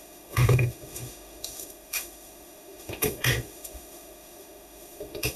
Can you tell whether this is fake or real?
fake